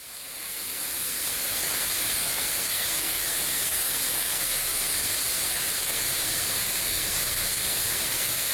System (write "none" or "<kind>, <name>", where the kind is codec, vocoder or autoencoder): codec, SNAC